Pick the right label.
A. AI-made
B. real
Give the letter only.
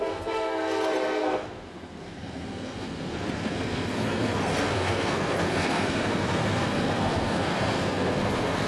A